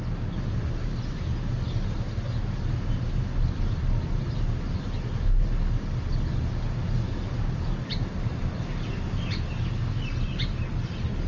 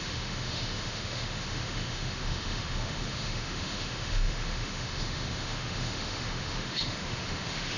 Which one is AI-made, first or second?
second